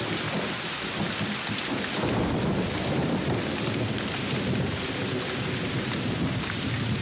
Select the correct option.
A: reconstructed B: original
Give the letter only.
B